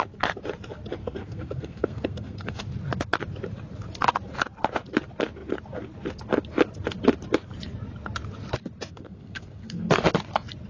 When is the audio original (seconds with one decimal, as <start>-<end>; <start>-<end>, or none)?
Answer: 0.0-1.0; 2.6-8.9; 10.0-10.7